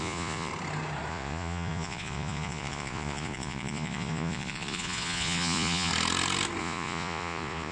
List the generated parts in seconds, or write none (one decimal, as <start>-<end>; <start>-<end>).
0.0-0.5; 1.1-5.9; 6.6-7.7